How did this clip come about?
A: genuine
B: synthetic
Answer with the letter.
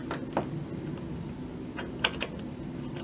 A